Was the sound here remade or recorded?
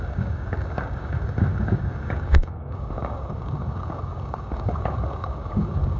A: remade